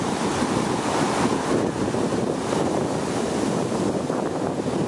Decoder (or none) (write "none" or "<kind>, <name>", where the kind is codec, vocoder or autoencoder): none